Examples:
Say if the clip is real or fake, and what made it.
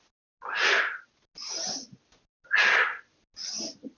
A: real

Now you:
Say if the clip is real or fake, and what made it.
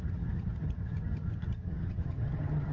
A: fake, vocoder, HiFi-GAN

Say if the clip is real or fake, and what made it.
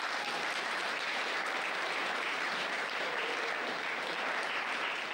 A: fake, vocoder, BigVGAN v2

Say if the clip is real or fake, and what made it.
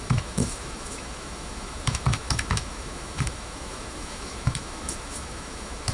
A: fake, autoencoder, DAC-VAE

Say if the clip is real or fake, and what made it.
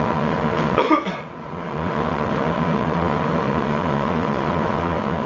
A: fake, vocoder, WaveNeXt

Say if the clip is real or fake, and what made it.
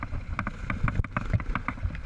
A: fake, vocoder, BigVGAN v2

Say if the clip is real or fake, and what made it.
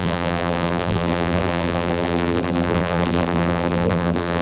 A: fake, vocoder, BigVGAN v2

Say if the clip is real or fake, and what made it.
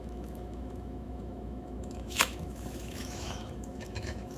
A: fake, autoencoder, DAC-VAE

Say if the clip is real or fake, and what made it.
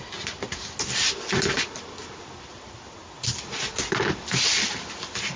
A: real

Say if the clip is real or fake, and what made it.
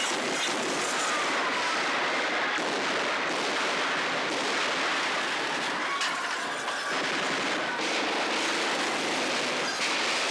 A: real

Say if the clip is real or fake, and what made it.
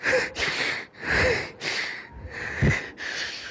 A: real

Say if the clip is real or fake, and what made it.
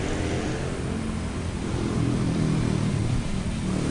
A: fake, vocoder, BigVGAN v2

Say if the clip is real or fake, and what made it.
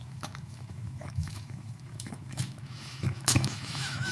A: fake, autoencoder, DAC-VAE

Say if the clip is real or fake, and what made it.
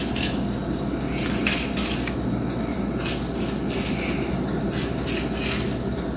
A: real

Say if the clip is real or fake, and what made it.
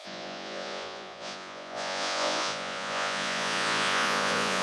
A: fake, vocoder, Vocos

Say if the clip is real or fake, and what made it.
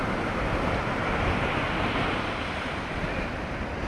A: real